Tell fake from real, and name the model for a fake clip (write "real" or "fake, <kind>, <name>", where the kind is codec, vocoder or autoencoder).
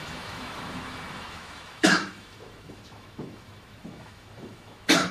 fake, autoencoder, DAC-VAE